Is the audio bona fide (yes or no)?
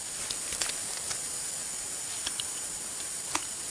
yes